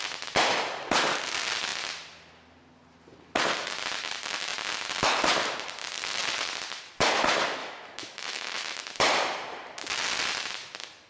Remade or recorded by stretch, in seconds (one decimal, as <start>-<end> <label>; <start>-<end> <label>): 0.0-7.6 recorded; 7.6-8.8 remade; 8.8-11.1 recorded